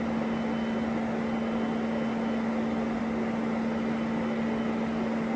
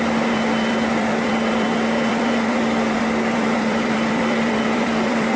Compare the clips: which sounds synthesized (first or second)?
second